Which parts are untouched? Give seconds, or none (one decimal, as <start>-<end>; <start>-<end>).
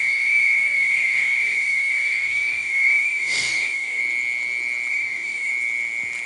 4.0-4.9; 5.5-6.3